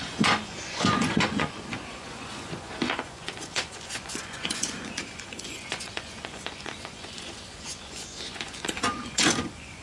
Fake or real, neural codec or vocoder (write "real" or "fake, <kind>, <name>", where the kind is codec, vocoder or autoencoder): fake, vocoder, Vocos